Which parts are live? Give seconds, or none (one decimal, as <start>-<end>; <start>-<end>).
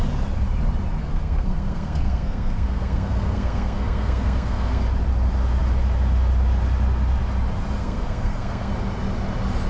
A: 0.0-1.0; 4.8-7.8; 8.7-9.7